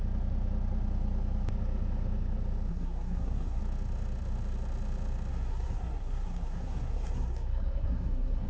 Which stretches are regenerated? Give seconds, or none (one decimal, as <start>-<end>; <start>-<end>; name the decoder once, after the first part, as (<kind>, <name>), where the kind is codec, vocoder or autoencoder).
2.7-3.6 (codec, SNAC); 5.3-8.5

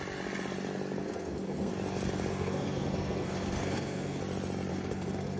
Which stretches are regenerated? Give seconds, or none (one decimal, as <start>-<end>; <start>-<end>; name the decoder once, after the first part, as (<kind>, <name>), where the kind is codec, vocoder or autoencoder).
1.0-1.7 (codec, SNAC); 2.3-4.2; 4.7-5.4

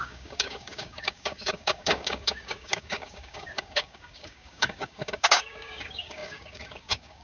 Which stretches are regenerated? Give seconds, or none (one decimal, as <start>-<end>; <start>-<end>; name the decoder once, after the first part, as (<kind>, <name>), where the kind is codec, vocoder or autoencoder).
0.0-7.2 (codec, DAC)